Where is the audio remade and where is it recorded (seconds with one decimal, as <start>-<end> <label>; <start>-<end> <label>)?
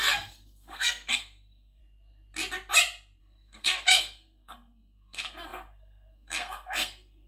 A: 0.0-1.8 remade; 1.8-3.2 recorded; 3.2-7.3 remade